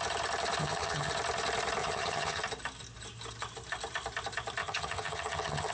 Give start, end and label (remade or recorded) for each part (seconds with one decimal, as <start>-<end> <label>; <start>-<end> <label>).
0.0-0.6 recorded; 0.6-1.1 remade; 1.1-1.8 recorded; 1.8-2.4 remade; 2.4-4.6 recorded; 4.6-5.7 remade